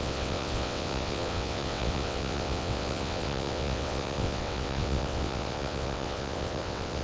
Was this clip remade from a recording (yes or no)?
yes